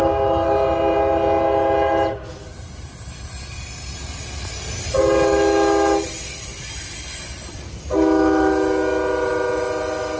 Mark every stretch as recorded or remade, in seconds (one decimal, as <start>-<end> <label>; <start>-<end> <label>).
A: 0.0-10.2 recorded